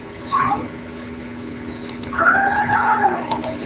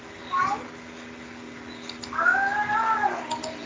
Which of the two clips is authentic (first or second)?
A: second